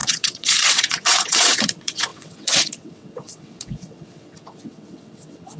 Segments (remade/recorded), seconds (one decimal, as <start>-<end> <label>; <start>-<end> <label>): 0.0-5.6 remade